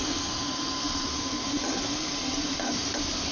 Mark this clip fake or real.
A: fake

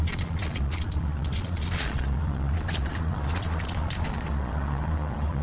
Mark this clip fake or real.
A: fake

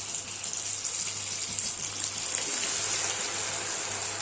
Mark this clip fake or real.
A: real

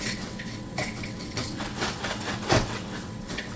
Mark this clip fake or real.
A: fake